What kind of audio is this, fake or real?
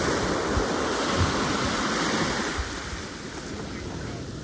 real